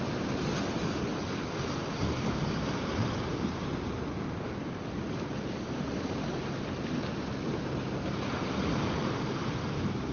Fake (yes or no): no